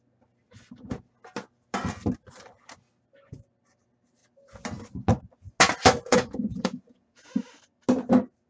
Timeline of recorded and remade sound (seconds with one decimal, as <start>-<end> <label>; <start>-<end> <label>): 0.0-6.1 recorded; 6.1-7.3 remade; 7.3-8.5 recorded